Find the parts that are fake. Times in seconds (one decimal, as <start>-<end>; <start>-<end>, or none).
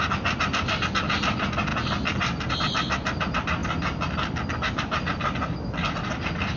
none